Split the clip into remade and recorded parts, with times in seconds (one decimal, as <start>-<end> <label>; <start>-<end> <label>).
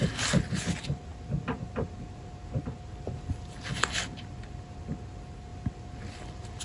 0.0-6.6 recorded